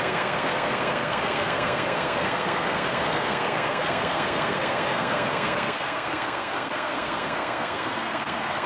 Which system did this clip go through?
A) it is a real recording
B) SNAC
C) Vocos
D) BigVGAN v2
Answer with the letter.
B